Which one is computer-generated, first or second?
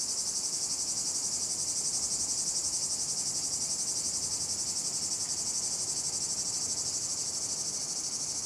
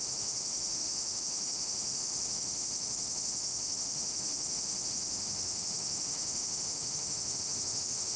second